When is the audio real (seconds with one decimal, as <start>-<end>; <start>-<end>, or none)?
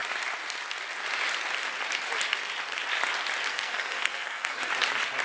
0.0-3.5; 4.7-5.2